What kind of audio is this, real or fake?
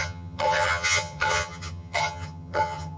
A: fake